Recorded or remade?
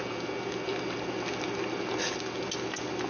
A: recorded